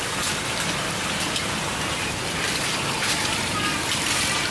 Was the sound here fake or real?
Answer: fake